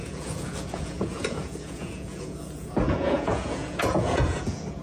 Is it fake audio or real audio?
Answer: fake